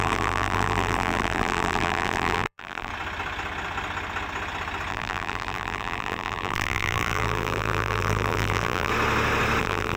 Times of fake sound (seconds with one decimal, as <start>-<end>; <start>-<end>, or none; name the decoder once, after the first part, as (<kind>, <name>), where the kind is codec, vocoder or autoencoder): 0.0-2.9 (vocoder, BigVGAN v2); 4.9-8.9; 9.6-10.0